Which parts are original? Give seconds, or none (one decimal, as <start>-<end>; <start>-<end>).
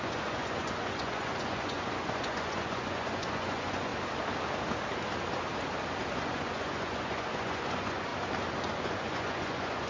3.9-6.1; 8.1-8.8